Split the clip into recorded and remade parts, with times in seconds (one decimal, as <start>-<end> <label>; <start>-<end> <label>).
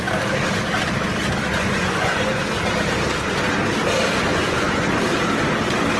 0.0-1.5 recorded; 1.5-2.4 remade; 2.4-4.3 recorded; 4.3-5.0 remade; 5.0-6.0 recorded